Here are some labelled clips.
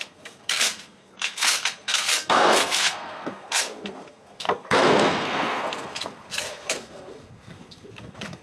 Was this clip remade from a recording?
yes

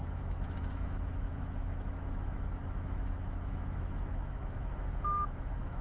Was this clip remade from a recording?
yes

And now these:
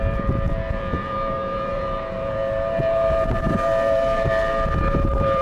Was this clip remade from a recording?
yes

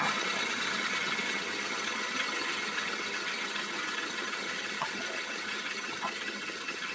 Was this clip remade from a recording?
yes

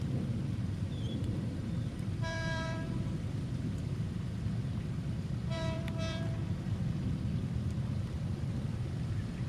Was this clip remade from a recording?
yes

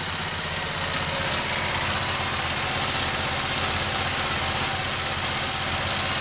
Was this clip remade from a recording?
no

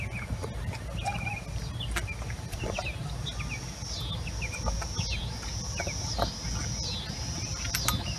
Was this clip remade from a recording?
no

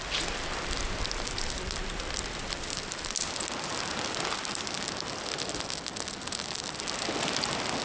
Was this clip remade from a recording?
no